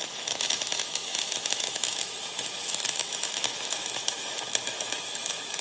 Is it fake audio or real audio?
fake